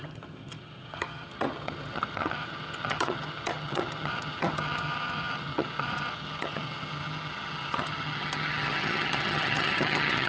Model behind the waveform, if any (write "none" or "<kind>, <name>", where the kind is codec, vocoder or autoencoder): vocoder, HiFi-GAN